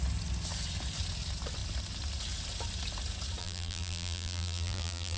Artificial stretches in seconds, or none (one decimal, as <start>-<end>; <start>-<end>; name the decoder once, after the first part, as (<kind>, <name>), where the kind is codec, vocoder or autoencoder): 3.4-5.2 (vocoder, BigVGAN v2)